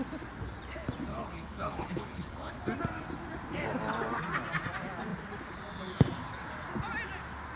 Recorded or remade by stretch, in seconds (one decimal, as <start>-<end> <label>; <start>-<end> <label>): 0.0-1.1 recorded; 1.1-2.5 remade; 2.5-7.6 recorded